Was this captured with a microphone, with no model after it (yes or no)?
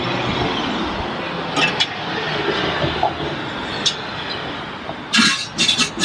yes